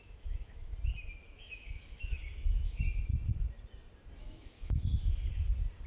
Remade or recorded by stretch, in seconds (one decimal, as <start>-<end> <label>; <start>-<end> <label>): 0.0-0.7 remade; 0.7-1.3 recorded; 1.3-3.1 remade; 3.1-4.2 recorded; 4.2-4.9 remade; 4.9-5.9 recorded